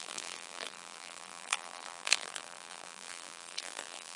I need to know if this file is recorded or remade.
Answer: remade